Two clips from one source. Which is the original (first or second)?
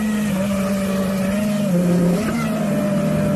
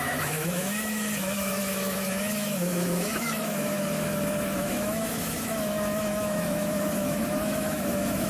first